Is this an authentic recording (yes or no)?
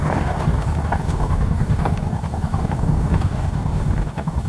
no